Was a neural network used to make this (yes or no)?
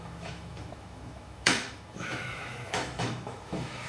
yes